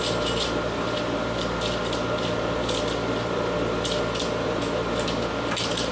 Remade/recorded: recorded